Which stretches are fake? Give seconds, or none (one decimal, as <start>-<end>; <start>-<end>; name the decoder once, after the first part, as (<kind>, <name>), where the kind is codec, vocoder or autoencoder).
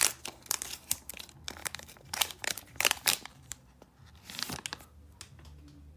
1.6-3.8 (vocoder, BigVGAN v2)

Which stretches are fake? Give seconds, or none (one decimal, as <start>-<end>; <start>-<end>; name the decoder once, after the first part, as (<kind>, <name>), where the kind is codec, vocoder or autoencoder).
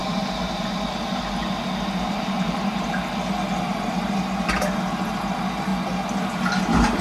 0.0-3.0 (vocoder, BigVGAN v2)